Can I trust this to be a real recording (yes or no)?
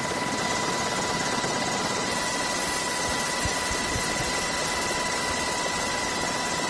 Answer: yes